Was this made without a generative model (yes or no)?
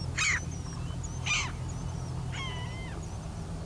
yes